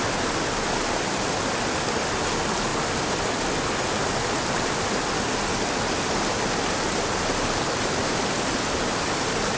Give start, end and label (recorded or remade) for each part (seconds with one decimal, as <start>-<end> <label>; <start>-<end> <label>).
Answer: 0.0-9.6 recorded